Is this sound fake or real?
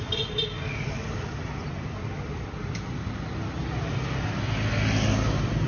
real